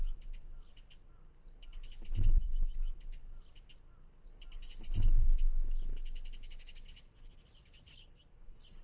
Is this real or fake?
real